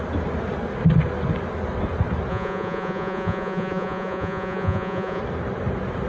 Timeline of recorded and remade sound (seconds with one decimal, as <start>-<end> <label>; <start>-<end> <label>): 0.0-2.3 recorded; 2.3-5.2 remade; 5.2-6.1 recorded